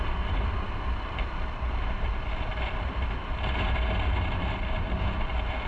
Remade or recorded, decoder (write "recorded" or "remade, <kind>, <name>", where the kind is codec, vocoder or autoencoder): recorded